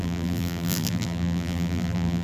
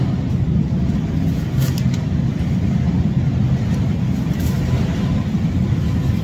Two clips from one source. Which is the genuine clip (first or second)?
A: second